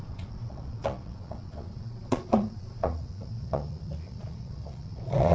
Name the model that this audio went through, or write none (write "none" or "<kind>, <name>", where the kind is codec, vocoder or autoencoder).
vocoder, Vocos